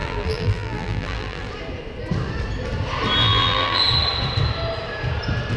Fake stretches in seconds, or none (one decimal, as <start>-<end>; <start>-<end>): 0.0-1.5; 3.2-3.8